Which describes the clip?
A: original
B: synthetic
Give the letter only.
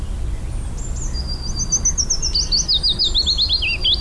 A